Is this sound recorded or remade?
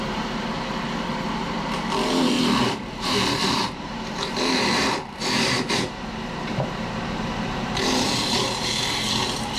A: remade